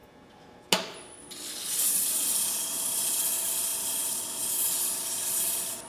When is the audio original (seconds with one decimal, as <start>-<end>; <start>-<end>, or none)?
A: 0.0-5.9